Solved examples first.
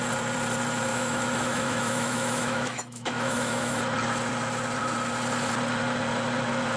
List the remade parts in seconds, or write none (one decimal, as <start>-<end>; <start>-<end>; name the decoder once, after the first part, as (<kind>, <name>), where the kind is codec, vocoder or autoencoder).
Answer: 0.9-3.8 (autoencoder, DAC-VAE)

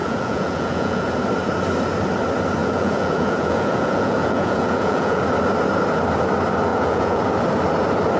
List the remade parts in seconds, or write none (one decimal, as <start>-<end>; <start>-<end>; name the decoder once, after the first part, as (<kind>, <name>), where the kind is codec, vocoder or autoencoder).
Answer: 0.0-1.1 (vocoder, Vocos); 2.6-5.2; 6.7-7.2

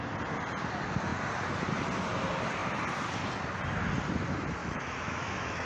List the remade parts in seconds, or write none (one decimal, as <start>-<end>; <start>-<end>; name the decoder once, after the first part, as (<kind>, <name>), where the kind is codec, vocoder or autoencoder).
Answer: 4.6-5.7 (autoencoder, DAC-VAE)

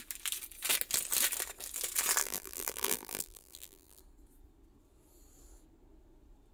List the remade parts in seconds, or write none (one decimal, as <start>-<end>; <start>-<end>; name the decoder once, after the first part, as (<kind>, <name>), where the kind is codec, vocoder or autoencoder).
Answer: 2.2-4.0 (vocoder, BigVGAN v2)

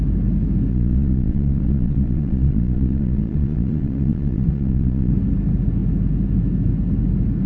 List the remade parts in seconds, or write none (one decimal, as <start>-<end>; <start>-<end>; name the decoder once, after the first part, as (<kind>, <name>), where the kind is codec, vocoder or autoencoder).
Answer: 0.7-5.1 (vocoder, Vocos)

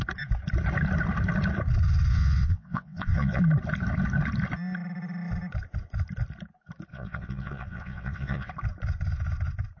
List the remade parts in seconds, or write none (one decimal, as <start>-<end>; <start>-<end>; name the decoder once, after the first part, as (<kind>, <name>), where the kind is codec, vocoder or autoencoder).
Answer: 2.1-3.4 (vocoder, WaveNeXt); 6.9-8.5

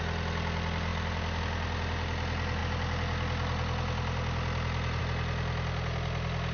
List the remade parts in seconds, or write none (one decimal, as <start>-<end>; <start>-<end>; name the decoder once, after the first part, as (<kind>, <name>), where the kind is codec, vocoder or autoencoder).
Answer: none